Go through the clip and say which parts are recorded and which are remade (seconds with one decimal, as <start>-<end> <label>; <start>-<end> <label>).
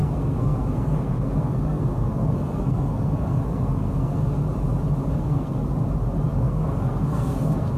0.0-4.4 remade; 4.4-5.1 recorded; 5.1-5.6 remade; 5.6-6.4 recorded; 6.4-7.8 remade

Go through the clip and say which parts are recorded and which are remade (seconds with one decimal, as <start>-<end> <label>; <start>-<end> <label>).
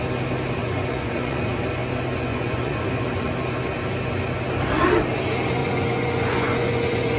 0.0-0.6 recorded; 0.6-1.5 remade; 1.5-2.3 recorded; 2.3-3.3 remade; 3.3-5.6 recorded; 5.6-7.2 remade